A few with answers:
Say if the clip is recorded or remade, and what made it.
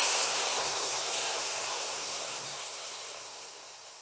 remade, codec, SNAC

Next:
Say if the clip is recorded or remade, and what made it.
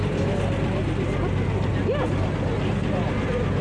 recorded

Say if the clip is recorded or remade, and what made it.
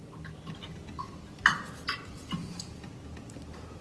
recorded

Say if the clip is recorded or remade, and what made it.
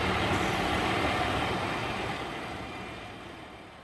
recorded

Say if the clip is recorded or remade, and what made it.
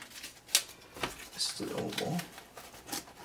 recorded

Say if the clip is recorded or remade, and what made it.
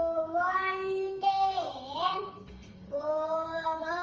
remade, codec, SNAC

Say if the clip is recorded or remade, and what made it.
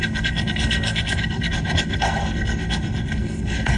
remade, codec, SNAC